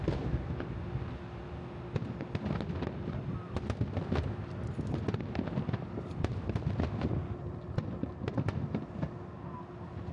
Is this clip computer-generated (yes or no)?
no